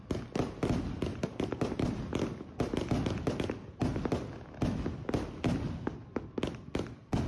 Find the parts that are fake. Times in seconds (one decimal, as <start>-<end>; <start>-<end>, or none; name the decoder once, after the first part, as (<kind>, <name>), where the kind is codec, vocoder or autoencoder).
1.1-2.0 (vocoder, BigVGAN v2)